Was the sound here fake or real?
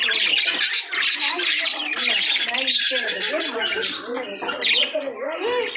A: real